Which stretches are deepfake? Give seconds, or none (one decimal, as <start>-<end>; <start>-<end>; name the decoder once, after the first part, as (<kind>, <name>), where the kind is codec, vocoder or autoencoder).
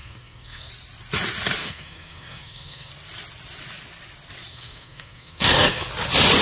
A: 0.0-0.7 (codec, SNAC); 1.6-2.9; 4.5-5.9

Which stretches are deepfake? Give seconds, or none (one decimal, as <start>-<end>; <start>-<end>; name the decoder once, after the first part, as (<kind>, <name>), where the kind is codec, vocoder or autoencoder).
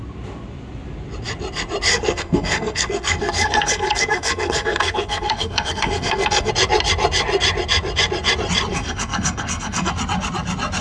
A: 1.9-6.5 (codec, SNAC); 8.7-9.9